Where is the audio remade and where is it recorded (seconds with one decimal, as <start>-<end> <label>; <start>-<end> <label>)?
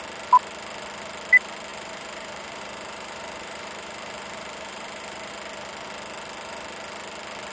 0.0-1.7 recorded; 1.7-5.3 remade; 5.3-7.5 recorded